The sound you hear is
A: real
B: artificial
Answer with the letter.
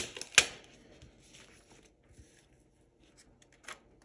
A